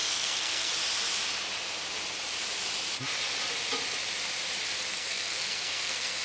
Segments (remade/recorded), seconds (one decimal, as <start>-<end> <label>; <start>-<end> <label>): 0.0-0.7 remade; 0.7-4.9 recorded; 4.9-6.2 remade